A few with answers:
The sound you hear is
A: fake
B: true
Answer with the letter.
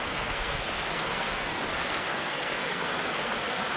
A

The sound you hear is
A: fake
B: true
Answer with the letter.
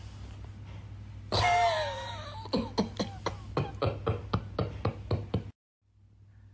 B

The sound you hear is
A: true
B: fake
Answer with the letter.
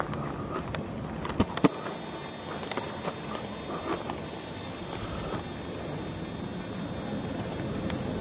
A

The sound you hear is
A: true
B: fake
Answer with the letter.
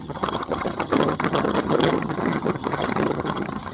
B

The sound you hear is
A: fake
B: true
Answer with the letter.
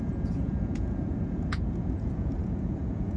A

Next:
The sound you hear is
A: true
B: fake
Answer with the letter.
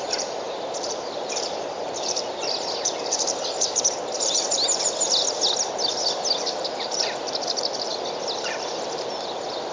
A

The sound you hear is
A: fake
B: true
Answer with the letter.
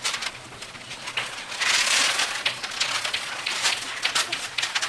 A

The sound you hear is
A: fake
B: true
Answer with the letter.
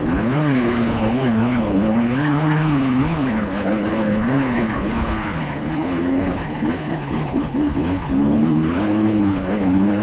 A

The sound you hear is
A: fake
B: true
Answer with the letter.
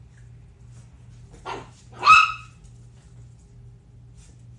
B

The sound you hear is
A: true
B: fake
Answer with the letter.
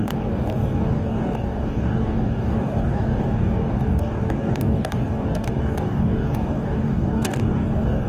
B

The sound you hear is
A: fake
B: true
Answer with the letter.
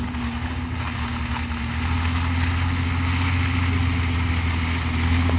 B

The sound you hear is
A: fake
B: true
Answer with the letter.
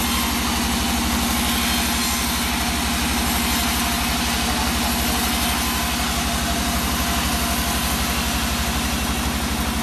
B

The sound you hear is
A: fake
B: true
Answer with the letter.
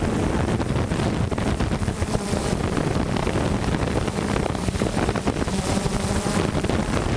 A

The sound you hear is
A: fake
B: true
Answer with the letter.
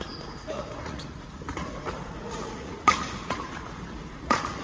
A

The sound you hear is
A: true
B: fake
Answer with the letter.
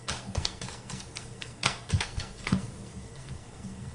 B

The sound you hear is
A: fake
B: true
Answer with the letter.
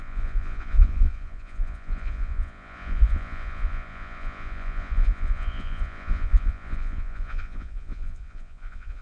A